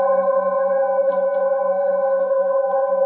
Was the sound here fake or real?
fake